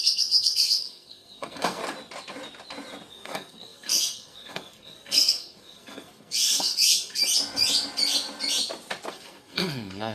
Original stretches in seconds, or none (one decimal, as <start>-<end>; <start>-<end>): 1.8-3.1; 7.2-9.1